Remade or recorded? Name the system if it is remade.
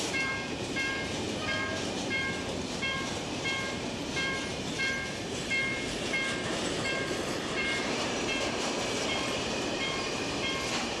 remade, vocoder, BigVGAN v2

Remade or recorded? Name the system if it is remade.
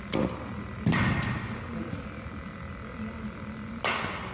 recorded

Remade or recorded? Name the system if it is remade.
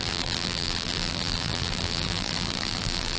remade, vocoder, BigVGAN v2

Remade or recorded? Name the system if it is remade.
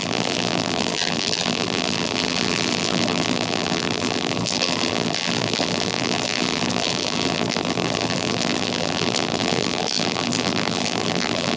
remade, vocoder, BigVGAN v2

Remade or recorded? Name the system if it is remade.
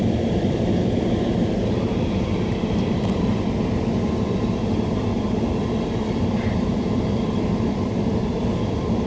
remade, vocoder, BigVGAN v2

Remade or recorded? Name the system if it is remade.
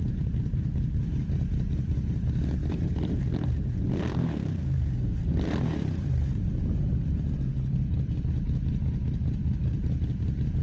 remade, vocoder, BigVGAN v2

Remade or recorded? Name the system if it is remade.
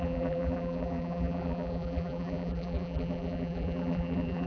remade, vocoder, BigVGAN v2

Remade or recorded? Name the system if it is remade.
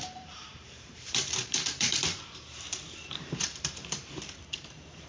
remade, vocoder, BigVGAN v2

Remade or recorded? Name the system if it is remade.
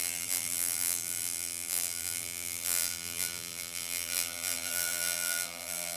remade, vocoder, BigVGAN v2